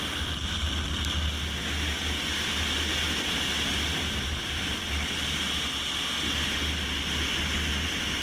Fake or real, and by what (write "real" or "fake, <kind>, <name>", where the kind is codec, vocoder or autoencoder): real